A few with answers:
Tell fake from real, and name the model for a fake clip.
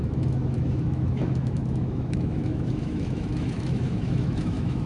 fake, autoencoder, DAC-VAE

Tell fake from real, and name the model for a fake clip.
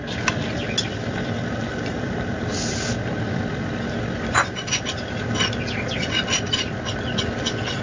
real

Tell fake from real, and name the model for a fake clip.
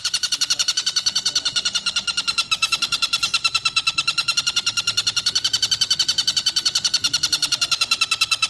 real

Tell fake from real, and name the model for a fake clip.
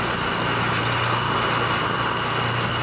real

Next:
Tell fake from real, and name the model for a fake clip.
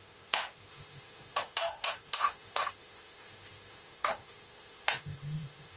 fake, autoencoder, DAC-VAE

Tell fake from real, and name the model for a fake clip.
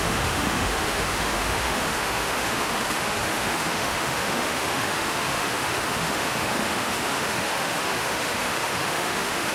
fake, autoencoder, DAC-VAE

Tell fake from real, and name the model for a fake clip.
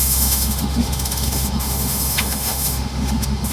fake, autoencoder, DAC-VAE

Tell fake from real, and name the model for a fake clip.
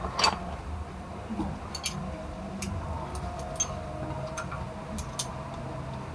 real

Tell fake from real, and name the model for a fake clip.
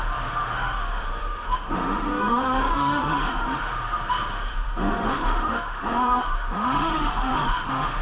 fake, autoencoder, DAC-VAE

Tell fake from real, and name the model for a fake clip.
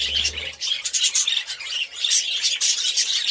real